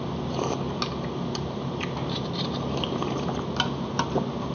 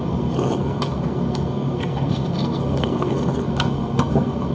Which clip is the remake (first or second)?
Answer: second